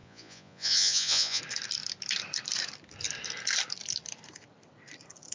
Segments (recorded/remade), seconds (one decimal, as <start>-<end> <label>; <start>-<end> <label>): 0.0-1.4 remade; 1.4-5.3 recorded